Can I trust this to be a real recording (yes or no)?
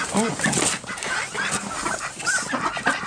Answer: yes